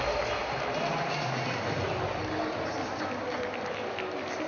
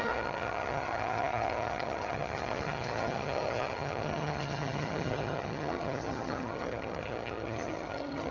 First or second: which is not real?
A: second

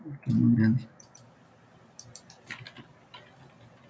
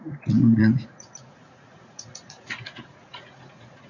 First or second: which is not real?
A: second